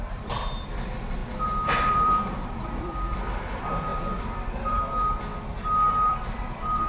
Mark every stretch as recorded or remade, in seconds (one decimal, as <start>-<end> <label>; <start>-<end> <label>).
0.0-1.2 remade; 1.2-1.9 recorded; 1.9-5.3 remade; 5.3-5.9 recorded; 5.9-6.9 remade